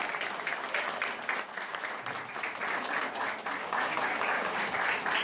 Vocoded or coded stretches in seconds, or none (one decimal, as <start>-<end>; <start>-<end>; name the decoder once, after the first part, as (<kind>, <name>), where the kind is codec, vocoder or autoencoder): 3.6-4.7 (codec, DAC)